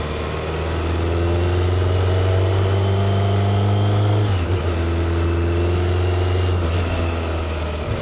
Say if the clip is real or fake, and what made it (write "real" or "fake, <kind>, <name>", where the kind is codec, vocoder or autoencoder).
real